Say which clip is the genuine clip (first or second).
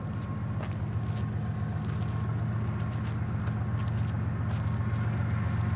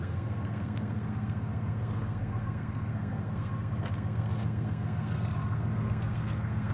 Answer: first